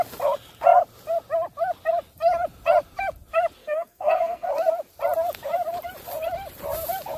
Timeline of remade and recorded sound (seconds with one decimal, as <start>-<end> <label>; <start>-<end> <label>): 0.0-3.6 recorded; 3.6-4.5 remade; 4.5-7.2 recorded